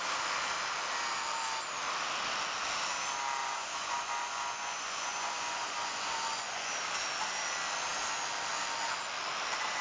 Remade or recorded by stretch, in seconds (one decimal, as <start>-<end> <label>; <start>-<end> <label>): 0.0-3.4 recorded; 3.4-6.7 remade; 6.7-9.8 recorded